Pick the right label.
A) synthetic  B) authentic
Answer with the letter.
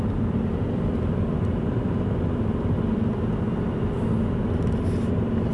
B